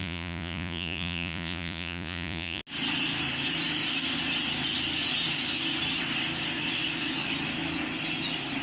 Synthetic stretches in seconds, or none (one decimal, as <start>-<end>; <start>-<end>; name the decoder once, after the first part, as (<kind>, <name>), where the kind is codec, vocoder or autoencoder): 0.0-2.6 (vocoder, Vocos)